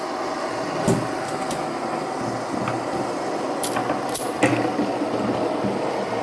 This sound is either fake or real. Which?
real